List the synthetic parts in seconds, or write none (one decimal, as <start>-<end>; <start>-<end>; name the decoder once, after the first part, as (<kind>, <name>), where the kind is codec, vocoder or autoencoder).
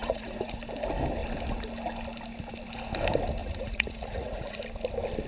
0.0-0.6 (vocoder, Vocos); 3.4-4.6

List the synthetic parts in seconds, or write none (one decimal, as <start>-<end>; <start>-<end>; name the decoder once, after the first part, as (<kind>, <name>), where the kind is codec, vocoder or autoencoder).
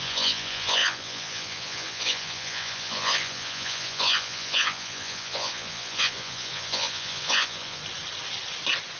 0.0-7.8 (vocoder, Vocos)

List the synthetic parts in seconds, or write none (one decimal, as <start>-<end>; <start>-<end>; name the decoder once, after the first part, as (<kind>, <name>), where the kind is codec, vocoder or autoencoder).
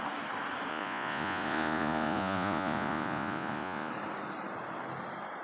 0.7-3.9 (vocoder, Vocos)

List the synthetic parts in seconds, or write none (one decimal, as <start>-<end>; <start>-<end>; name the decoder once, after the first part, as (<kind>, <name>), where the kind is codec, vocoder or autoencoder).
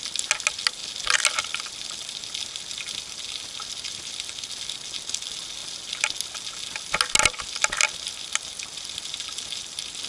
none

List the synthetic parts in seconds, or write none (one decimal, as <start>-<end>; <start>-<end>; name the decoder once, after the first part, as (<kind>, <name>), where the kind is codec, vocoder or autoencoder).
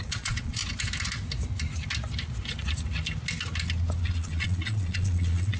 0.0-0.6 (vocoder, Vocos); 4.0-5.6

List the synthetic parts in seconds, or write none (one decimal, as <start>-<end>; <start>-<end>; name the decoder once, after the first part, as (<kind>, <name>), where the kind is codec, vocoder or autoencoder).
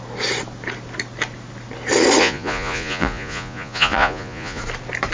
2.2-4.6 (vocoder, Vocos)